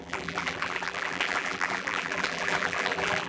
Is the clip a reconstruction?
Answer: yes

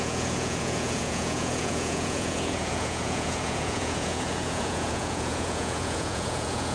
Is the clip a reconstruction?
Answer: yes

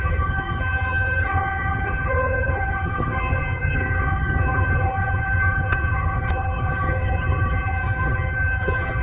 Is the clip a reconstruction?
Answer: yes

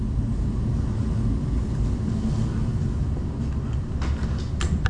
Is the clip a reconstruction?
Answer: no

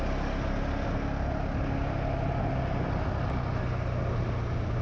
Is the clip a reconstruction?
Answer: no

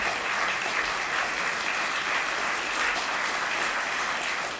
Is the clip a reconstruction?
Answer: no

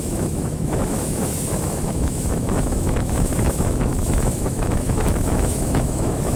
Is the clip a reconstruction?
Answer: yes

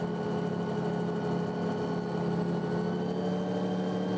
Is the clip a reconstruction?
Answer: no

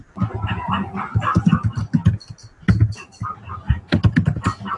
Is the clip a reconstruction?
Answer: no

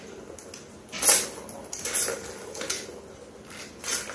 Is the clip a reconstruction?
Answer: no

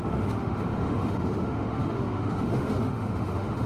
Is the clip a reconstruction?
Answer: yes